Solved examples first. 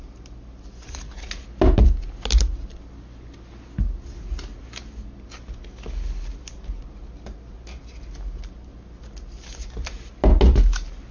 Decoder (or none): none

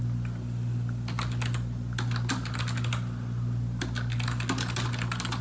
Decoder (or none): none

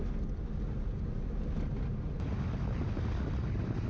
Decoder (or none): none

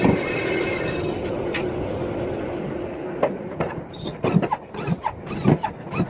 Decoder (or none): vocoder, BigVGAN v2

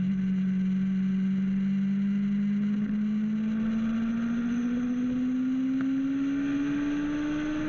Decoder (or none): none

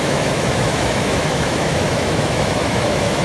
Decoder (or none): autoencoder, DAC-VAE